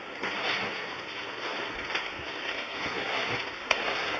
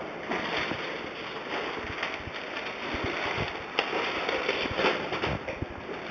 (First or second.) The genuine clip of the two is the second